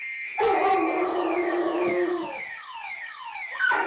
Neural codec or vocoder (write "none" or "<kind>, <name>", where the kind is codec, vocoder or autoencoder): codec, DAC